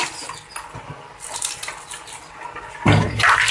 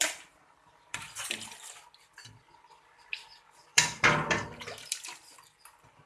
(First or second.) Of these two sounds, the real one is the first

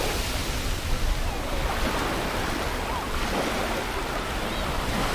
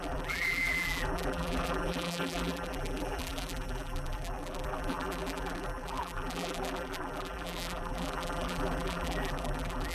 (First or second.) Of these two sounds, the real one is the first